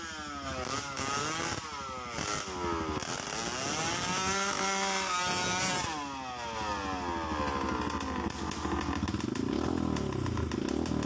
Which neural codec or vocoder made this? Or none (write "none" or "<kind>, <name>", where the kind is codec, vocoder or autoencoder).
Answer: none